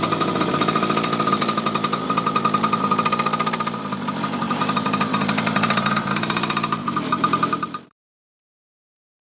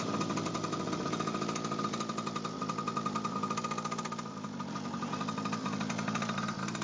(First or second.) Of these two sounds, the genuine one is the second